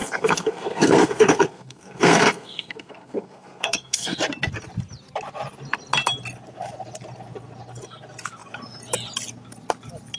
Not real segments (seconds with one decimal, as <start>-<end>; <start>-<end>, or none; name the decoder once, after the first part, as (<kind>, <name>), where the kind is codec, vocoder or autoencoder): 0.0-4.2 (codec, SNAC)